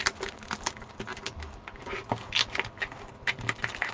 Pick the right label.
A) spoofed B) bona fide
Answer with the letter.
B